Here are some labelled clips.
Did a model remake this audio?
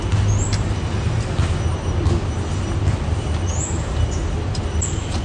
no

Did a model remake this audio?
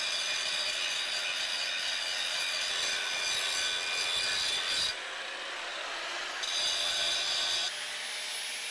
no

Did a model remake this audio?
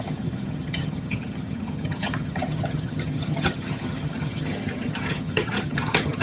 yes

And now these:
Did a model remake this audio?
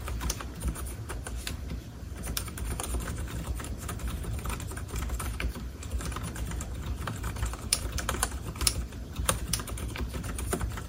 yes